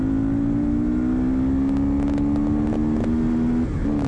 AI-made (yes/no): no